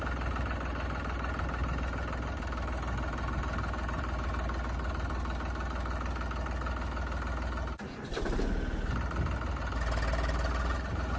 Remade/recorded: recorded